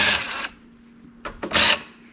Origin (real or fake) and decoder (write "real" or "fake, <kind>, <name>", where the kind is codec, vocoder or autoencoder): real